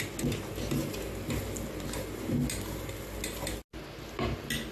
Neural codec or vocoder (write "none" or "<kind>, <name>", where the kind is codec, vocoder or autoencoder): none